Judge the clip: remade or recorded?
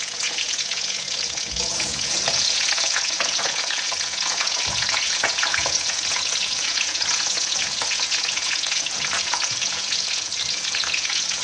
remade